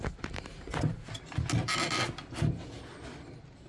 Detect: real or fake real